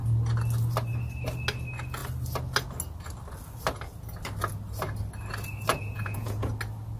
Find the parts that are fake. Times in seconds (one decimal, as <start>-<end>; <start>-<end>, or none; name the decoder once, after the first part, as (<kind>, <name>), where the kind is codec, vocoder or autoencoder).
5.7-6.5 (vocoder, Vocos)